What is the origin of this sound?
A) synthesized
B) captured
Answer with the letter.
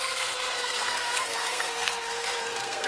A